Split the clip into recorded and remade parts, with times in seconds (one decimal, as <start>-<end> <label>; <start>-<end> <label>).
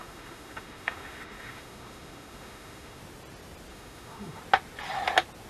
0.0-3.0 remade; 3.0-3.7 recorded; 3.7-4.4 remade; 4.4-5.5 recorded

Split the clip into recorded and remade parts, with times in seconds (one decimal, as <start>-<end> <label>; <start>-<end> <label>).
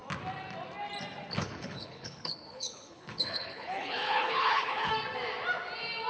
0.0-1.4 recorded; 1.4-4.9 remade; 4.9-6.1 recorded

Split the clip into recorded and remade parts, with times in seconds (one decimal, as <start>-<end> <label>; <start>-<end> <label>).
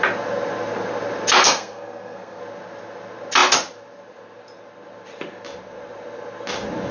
0.0-1.4 recorded; 1.4-2.4 remade; 2.4-6.9 recorded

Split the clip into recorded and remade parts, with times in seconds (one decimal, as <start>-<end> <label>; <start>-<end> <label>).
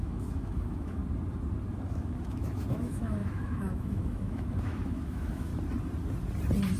0.0-1.0 remade; 1.0-1.9 recorded; 1.9-5.5 remade; 5.5-6.8 recorded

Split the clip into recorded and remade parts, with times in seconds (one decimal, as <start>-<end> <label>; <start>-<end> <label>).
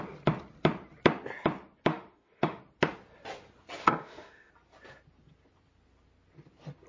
0.0-1.9 recorded; 1.9-2.6 remade; 2.6-3.8 recorded; 3.8-4.5 remade; 4.5-6.9 recorded